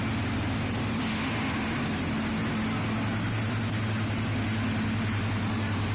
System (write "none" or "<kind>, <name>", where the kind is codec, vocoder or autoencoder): none